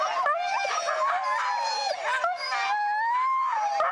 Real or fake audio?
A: real